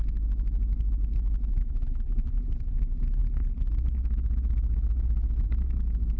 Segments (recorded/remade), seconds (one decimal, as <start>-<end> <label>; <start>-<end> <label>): 0.0-1.5 recorded; 1.5-3.7 remade; 3.7-6.2 recorded